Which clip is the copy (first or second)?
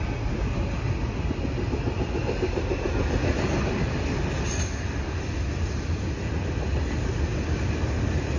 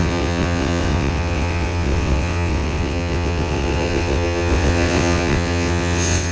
second